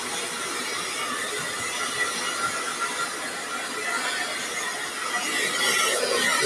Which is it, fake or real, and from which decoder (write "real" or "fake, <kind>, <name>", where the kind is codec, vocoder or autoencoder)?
real